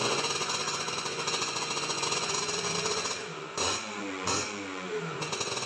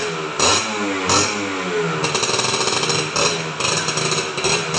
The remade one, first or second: first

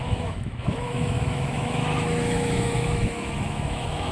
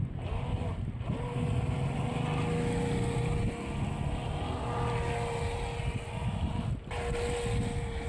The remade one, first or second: first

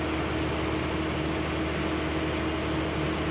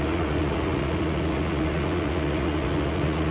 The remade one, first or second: second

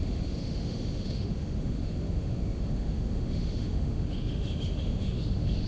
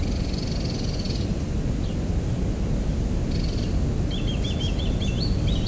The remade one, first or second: first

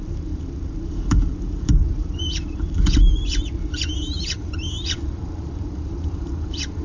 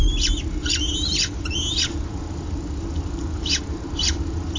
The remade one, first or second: first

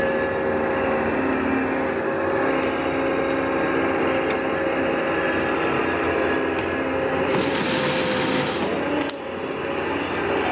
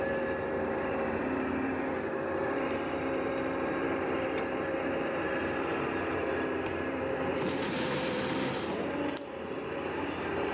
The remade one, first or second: second